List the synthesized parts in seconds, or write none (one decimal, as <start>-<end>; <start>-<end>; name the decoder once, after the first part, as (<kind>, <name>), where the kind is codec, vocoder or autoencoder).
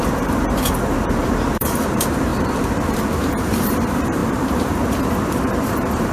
0.0-6.1 (vocoder, BigVGAN v2)